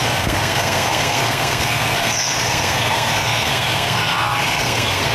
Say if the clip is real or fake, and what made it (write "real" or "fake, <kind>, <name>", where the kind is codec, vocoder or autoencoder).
fake, codec, SNAC